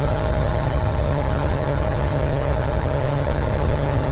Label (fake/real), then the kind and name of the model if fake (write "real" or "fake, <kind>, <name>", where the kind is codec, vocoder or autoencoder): fake, vocoder, HiFi-GAN